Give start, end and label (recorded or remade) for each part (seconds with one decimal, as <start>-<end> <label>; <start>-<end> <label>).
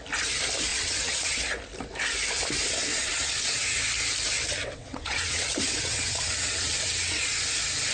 0.0-0.7 recorded; 0.7-1.4 remade; 1.4-2.9 recorded; 2.9-3.5 remade; 3.5-4.6 recorded; 4.6-7.3 remade; 7.3-7.9 recorded